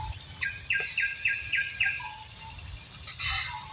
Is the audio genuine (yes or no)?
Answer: yes